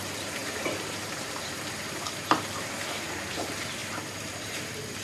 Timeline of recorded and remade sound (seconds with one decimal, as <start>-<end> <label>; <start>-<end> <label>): 0.0-5.0 remade